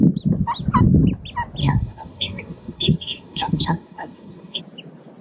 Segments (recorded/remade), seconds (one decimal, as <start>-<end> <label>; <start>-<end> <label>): 0.0-1.6 recorded; 1.6-4.6 remade; 4.6-5.2 recorded